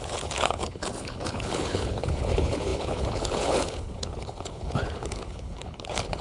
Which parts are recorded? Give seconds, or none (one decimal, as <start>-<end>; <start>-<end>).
none

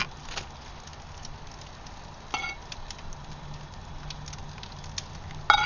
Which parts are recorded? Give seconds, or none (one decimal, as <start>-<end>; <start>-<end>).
0.0-5.7

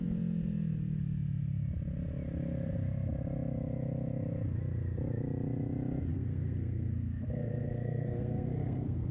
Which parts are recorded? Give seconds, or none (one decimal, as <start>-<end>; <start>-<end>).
0.0-6.1

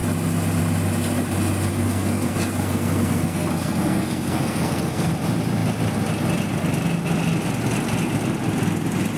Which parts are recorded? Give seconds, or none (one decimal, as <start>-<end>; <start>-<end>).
0.0-1.7; 5.1-9.2

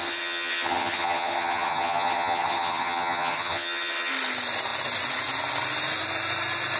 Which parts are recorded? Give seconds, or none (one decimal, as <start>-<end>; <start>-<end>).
4.1-6.8

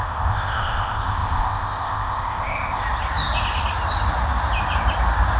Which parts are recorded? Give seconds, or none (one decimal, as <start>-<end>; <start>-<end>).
2.8-5.4

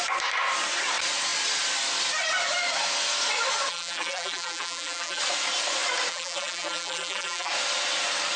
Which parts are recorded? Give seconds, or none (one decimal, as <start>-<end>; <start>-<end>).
0.0-3.7; 5.2-6.1; 7.5-8.4

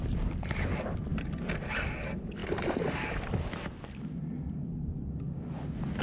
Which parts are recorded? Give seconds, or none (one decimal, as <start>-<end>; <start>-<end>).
0.0-6.0